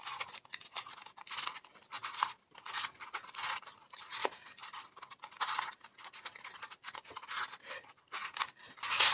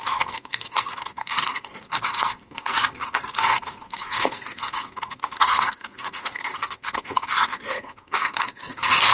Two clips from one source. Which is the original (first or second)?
first